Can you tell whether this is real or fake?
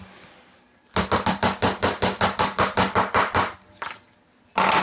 real